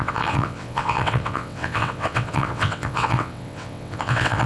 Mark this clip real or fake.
fake